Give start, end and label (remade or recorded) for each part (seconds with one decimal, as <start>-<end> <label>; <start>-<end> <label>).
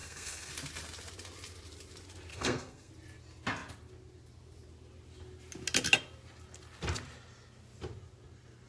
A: 0.0-0.5 remade; 0.5-2.3 recorded; 2.3-2.9 remade; 2.9-8.7 recorded